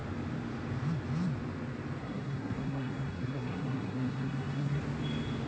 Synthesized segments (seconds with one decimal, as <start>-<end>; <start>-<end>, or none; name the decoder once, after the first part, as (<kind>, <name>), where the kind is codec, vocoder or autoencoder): 2.0-4.8 (codec, SNAC)